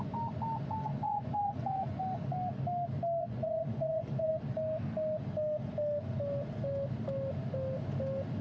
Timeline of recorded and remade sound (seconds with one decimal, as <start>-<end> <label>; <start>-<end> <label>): 0.0-0.9 recorded; 0.9-2.0 remade; 2.0-3.2 recorded; 3.2-4.3 remade; 4.3-8.4 recorded